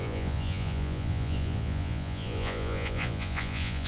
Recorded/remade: remade